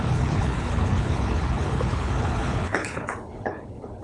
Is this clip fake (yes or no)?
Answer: yes